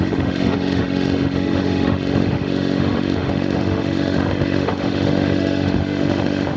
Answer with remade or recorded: remade